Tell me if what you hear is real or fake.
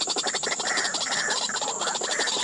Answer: fake